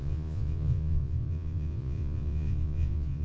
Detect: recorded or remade remade